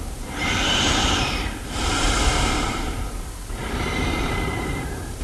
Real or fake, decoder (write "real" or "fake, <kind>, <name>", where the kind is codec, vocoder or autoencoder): fake, vocoder, BigVGAN v2